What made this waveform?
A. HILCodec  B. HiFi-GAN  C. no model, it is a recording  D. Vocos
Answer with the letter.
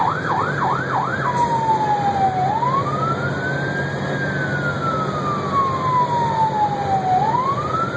C